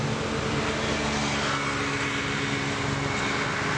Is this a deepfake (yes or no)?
no